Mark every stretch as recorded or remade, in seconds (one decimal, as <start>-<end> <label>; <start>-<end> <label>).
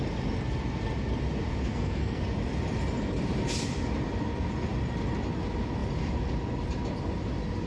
0.0-1.7 recorded; 1.7-2.2 remade; 2.2-7.7 recorded